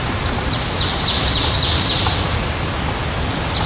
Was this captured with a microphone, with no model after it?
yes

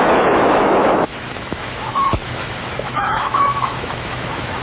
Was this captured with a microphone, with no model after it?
no